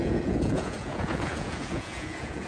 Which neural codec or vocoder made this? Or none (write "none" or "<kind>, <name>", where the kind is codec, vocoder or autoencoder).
vocoder, Vocos